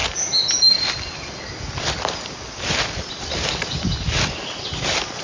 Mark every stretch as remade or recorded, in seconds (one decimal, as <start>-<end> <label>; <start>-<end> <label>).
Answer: 0.0-5.2 recorded